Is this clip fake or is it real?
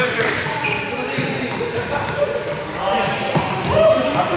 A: fake